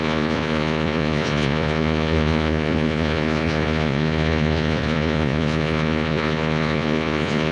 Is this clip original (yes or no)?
no